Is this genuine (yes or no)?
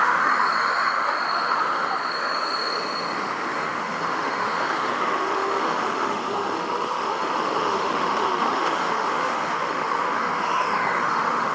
no